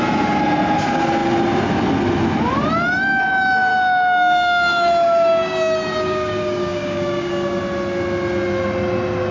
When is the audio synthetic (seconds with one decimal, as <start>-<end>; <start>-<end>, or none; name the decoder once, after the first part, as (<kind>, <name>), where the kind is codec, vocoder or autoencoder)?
3.7-7.6 (codec, DAC)